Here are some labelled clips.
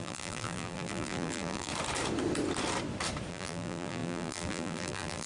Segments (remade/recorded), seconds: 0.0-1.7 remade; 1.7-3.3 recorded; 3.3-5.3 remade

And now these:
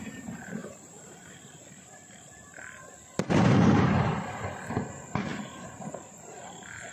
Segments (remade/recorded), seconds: 0.0-0.6 recorded; 0.6-4.7 remade; 4.7-5.3 recorded; 5.3-6.9 remade

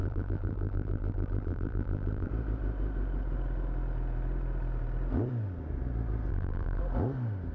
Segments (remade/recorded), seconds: 0.0-2.3 remade; 2.3-6.3 recorded; 6.3-6.8 remade; 6.8-7.5 recorded

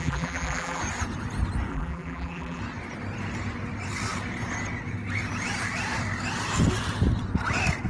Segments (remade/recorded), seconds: 0.0-0.8 remade; 0.8-1.7 recorded; 1.7-2.6 remade; 2.6-7.9 recorded

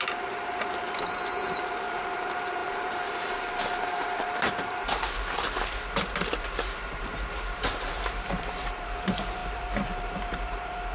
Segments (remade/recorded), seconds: 0.0-10.9 remade

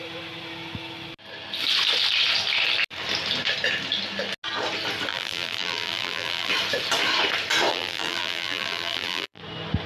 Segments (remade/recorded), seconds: 0.0-5.1 recorded; 5.1-6.5 remade; 6.5-7.7 recorded; 7.7-9.4 remade; 9.4-9.9 recorded

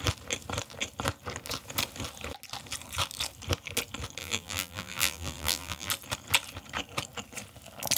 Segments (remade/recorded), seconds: 0.0-4.2 recorded; 4.2-5.9 remade; 5.9-8.0 recorded